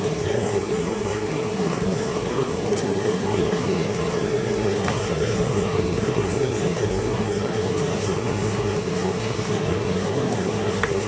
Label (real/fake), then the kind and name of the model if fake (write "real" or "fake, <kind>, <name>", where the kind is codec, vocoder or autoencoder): fake, codec, SNAC